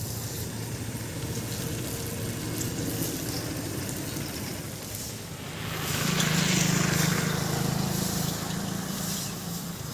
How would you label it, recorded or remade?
recorded